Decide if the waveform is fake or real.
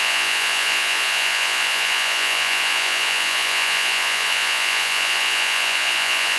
fake